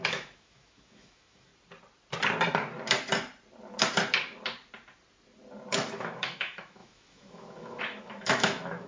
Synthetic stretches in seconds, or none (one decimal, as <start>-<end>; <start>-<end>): 0.0-1.5; 5.7-8.9